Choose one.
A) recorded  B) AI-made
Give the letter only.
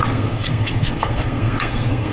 B